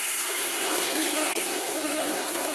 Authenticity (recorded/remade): remade